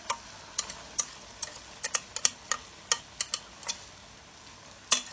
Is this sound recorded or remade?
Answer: recorded